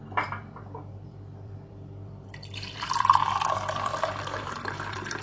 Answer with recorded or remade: remade